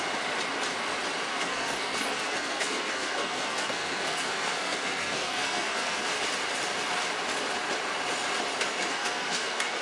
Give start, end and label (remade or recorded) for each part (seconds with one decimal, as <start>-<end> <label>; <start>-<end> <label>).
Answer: 0.0-1.3 recorded; 1.3-6.0 remade; 6.0-8.9 recorded; 8.9-9.8 remade